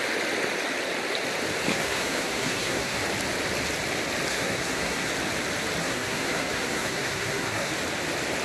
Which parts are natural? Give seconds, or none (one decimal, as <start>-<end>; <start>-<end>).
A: 0.0-1.7; 3.0-4.3; 5.1-5.8; 7.7-8.4